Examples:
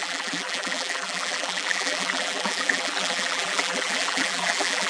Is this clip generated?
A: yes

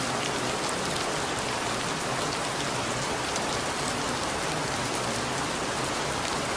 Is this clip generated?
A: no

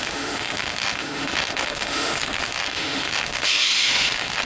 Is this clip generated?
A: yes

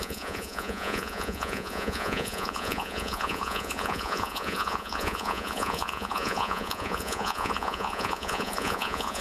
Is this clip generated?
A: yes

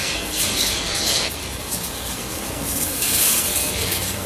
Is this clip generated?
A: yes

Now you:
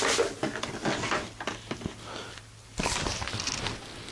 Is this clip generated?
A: no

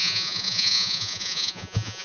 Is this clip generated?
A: yes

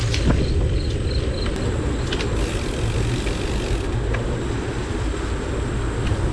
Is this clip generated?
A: no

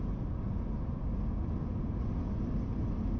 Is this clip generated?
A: no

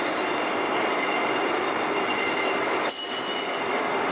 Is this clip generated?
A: yes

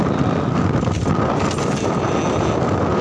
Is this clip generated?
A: no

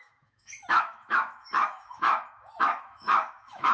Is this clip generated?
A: yes